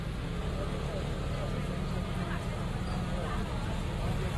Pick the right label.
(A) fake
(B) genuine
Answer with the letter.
B